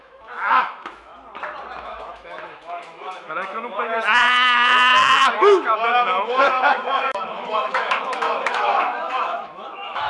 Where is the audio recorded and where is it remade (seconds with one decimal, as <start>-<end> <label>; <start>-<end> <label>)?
0.0-1.1 remade; 1.1-1.8 recorded; 1.8-10.1 remade